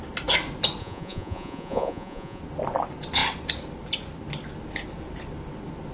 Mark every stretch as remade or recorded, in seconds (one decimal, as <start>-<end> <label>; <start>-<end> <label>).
0.0-0.8 recorded; 0.8-2.4 remade; 2.4-5.9 recorded